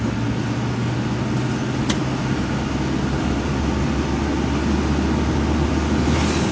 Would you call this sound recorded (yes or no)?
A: yes